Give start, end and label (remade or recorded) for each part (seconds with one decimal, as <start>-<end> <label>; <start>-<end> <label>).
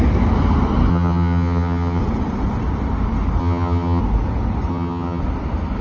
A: 0.0-0.9 recorded; 0.9-2.0 remade; 2.0-3.4 recorded; 3.4-4.0 remade; 4.0-4.7 recorded; 4.7-5.2 remade; 5.2-5.8 recorded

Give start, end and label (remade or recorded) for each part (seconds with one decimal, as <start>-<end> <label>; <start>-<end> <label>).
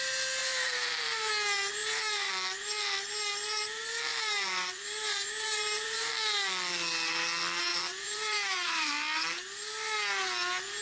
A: 0.0-0.4 recorded; 0.4-1.3 remade; 1.3-1.8 recorded; 1.8-2.3 remade; 2.3-4.1 recorded; 4.1-6.1 remade; 6.1-7.7 recorded; 7.7-8.9 remade; 8.9-10.8 recorded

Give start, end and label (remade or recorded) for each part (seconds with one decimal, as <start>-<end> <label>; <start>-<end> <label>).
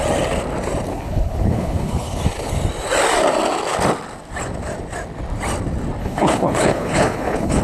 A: 0.0-0.9 recorded; 0.9-2.2 remade; 2.2-6.0 recorded; 6.0-7.6 remade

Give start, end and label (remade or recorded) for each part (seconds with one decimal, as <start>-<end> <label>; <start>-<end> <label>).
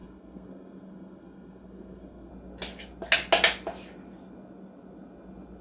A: 0.0-2.3 remade; 2.3-5.6 recorded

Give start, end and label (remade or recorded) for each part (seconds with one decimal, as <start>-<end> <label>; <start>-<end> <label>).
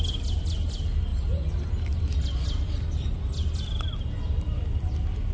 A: 0.0-5.3 recorded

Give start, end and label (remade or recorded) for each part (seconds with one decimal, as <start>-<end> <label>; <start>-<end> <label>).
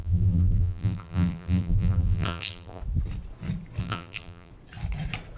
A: 0.0-2.8 remade; 2.8-3.8 recorded; 3.8-4.5 remade; 4.5-5.4 recorded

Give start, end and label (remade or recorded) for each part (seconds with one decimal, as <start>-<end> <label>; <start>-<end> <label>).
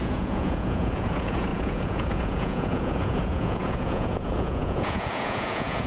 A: 0.0-5.9 remade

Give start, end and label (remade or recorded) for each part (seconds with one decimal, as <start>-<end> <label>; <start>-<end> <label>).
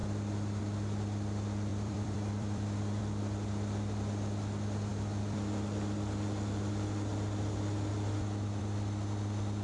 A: 0.0-1.7 recorded; 1.7-3.0 remade; 3.0-9.6 recorded